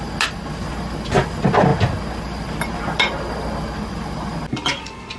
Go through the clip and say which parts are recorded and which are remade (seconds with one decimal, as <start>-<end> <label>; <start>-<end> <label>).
0.0-5.2 recorded